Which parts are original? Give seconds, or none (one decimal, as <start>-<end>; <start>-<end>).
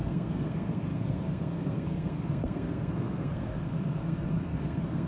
none